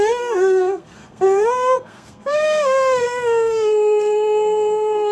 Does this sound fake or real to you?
fake